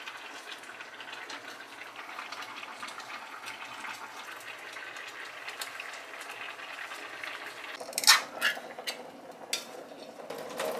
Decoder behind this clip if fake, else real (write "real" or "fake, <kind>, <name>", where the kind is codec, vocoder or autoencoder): real